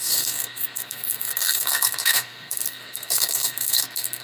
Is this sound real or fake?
fake